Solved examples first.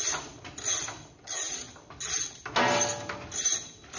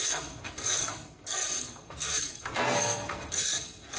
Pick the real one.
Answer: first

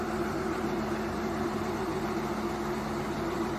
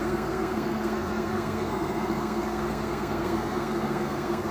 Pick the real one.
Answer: first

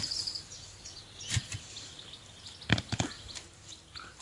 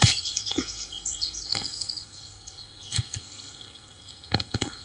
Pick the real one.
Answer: first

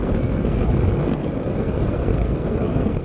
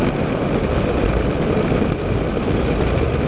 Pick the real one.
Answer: second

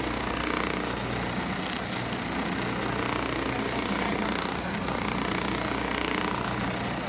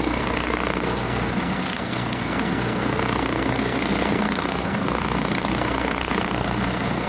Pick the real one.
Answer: first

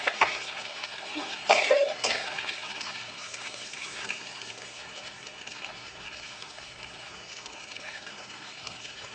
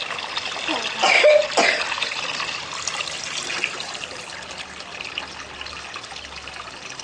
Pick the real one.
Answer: second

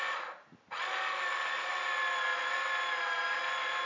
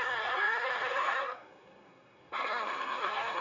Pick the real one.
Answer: first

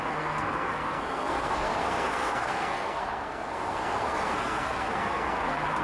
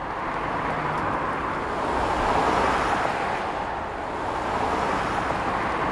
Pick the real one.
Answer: second